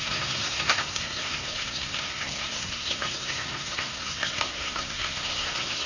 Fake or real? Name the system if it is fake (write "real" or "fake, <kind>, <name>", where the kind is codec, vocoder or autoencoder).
fake, codec, SNAC